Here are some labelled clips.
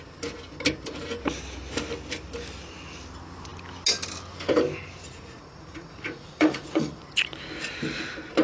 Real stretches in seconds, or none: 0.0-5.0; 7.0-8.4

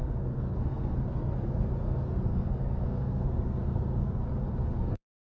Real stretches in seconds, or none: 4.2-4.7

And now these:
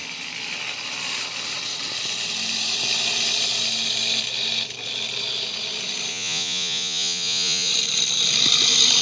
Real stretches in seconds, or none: 0.0-6.1; 7.7-9.0

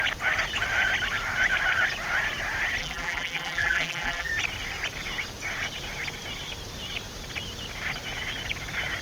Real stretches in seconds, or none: 0.0-2.8; 4.3-9.0

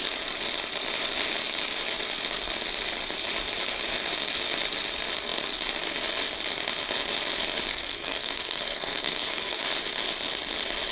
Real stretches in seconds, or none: 0.0-7.7; 9.6-10.9

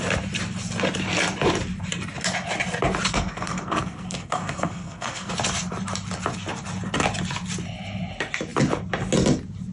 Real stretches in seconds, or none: 0.0-3.1; 5.3-9.7

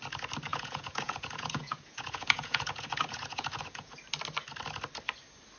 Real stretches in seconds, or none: 0.0-0.5; 3.9-5.6